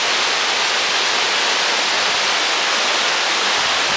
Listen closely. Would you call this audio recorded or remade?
recorded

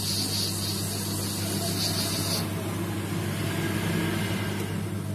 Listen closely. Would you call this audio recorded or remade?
recorded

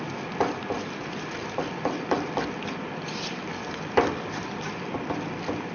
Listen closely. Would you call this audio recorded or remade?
recorded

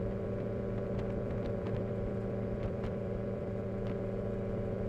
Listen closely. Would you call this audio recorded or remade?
remade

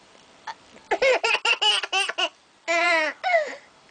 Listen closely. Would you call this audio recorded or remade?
remade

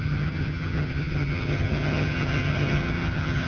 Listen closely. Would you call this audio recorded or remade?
remade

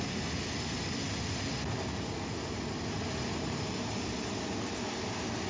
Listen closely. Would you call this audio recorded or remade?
recorded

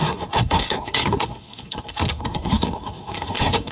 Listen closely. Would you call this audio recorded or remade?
remade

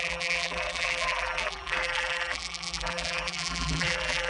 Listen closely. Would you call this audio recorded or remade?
remade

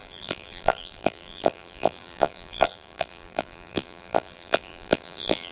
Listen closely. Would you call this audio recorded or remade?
remade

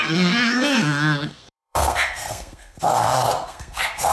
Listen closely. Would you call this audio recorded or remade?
remade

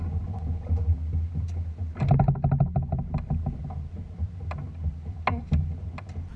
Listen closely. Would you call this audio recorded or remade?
recorded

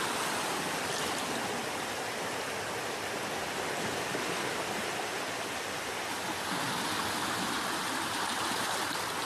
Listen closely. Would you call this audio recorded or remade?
recorded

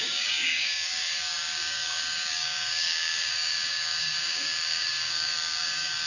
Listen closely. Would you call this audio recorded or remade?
remade